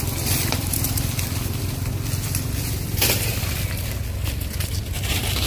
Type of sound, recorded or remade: recorded